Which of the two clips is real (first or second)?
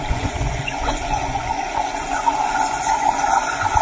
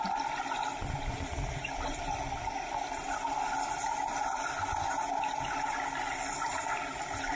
second